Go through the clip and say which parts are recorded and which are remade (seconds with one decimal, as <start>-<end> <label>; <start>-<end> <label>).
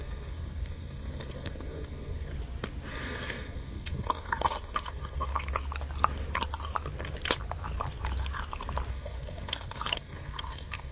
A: 0.0-2.3 remade; 2.3-2.9 recorded; 2.9-5.3 remade; 5.3-8.9 recorded; 8.9-10.9 remade